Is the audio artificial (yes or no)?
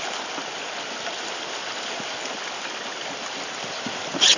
no